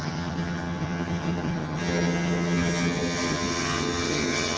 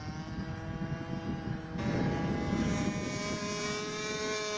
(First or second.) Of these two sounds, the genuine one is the second